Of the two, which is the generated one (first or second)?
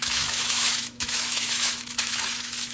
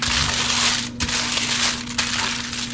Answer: first